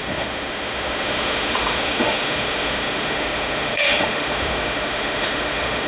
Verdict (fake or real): fake